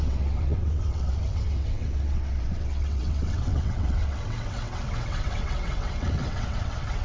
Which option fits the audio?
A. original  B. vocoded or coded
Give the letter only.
B